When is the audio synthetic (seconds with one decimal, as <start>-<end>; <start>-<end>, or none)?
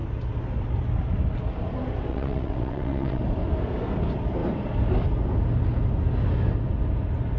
2.1-3.2